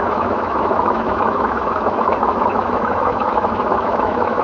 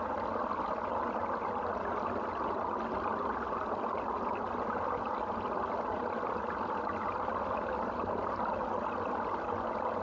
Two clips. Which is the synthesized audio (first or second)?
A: first